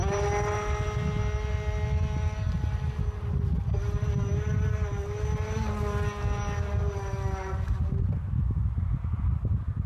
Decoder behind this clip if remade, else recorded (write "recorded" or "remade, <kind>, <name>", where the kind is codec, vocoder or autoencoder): recorded